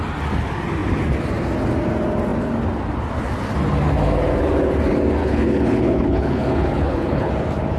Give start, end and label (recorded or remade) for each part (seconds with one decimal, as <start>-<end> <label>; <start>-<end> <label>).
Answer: 0.0-5.2 recorded; 5.2-7.3 remade; 7.3-7.8 recorded